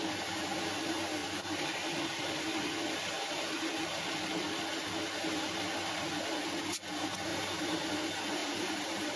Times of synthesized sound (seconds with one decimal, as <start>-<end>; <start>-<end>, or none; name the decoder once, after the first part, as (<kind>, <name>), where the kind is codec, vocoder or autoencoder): 7.3-7.9 (vocoder, BigVGAN v2); 8.4-9.2